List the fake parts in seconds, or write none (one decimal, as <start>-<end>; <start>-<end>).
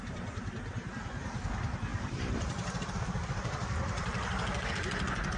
1.9-4.7